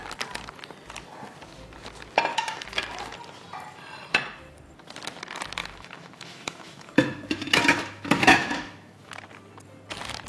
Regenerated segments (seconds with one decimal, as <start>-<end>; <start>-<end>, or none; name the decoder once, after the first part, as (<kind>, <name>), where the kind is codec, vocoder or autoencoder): 2.3-2.8 (autoencoder, DAC-VAE); 5.6-9.1